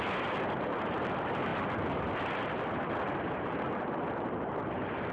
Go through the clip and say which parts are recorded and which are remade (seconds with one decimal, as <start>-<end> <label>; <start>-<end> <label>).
0.0-5.1 recorded